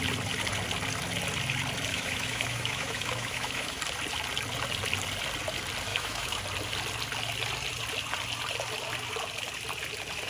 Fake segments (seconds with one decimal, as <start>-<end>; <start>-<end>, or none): 1.9-3.8; 5.9-6.4